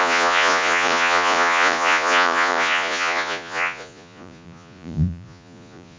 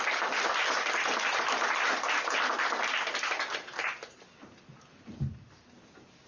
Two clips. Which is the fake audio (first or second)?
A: first